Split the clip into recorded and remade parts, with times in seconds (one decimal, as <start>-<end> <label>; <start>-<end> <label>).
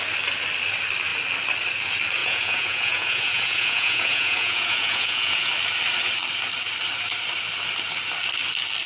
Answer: 0.0-2.2 recorded; 2.2-5.5 remade; 5.5-8.9 recorded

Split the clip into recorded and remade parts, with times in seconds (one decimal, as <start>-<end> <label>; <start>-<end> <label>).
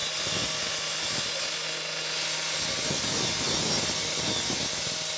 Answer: 0.0-5.2 recorded